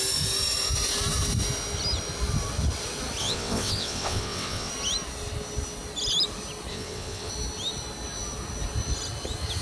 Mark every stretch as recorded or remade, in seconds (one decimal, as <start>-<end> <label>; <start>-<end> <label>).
0.0-3.2 recorded; 3.2-4.7 remade; 4.7-6.7 recorded; 6.7-7.3 remade; 7.3-9.6 recorded